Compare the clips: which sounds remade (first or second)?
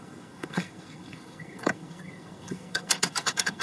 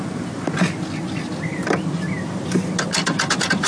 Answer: first